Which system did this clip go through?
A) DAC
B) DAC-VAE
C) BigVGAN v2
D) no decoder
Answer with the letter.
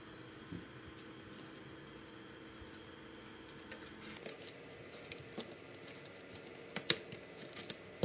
D